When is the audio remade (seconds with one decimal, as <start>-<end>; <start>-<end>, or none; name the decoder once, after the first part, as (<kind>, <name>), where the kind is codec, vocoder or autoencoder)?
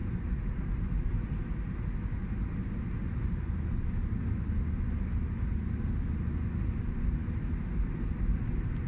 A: 0.0-1.1 (vocoder, BigVGAN v2)